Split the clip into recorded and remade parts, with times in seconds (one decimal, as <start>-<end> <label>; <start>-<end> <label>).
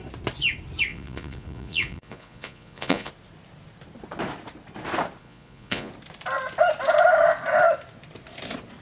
0.0-0.9 recorded; 0.9-3.1 remade; 3.1-5.2 recorded; 5.2-5.9 remade; 5.9-8.8 recorded